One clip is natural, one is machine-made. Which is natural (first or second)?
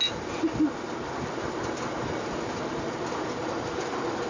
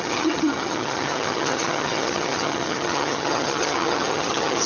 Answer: first